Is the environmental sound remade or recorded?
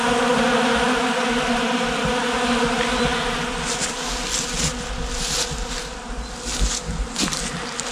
recorded